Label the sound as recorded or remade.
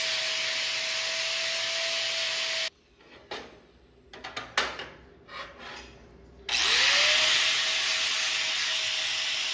recorded